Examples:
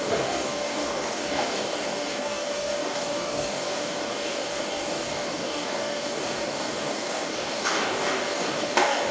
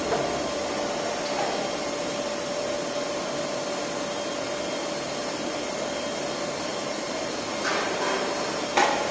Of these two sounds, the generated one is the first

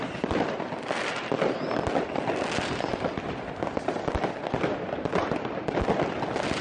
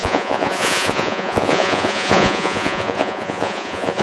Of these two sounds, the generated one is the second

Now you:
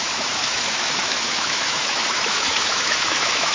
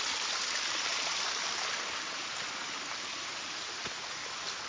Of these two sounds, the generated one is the first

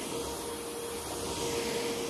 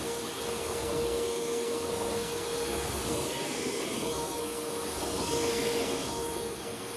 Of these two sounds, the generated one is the second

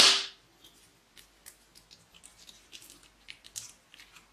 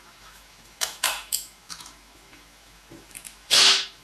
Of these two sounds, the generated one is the second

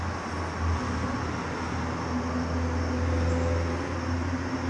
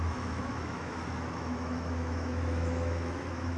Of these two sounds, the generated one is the second